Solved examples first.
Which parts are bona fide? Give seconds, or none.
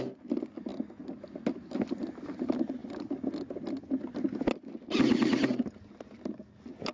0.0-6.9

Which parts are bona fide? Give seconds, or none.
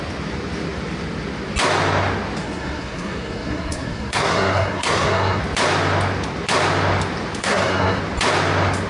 0.0-2.4; 5.4-7.4; 8.0-8.9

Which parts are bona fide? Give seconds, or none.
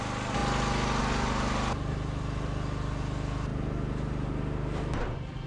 0.0-5.5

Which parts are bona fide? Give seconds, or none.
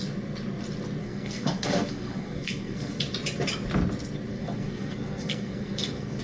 0.0-1.0; 3.0-4.3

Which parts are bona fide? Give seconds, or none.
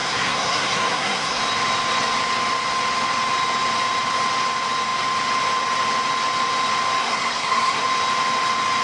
1.4-7.0; 7.8-8.8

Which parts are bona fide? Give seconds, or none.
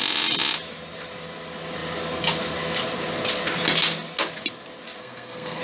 0.0-5.0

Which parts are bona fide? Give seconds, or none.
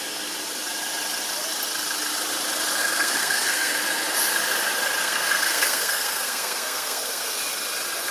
0.0-2.8; 3.7-5.0; 7.4-8.1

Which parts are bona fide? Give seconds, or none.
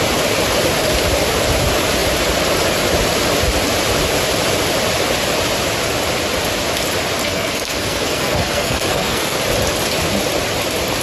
0.0-7.2; 9.4-11.0